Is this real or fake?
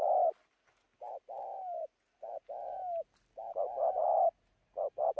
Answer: real